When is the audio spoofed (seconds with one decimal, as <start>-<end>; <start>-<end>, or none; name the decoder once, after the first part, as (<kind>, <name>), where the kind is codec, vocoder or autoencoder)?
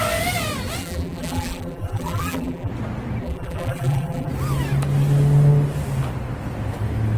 0.8-2.7 (vocoder, BigVGAN v2); 3.2-4.3